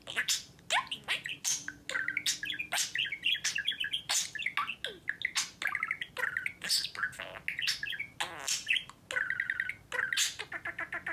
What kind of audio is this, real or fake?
real